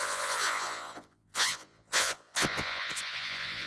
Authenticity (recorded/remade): remade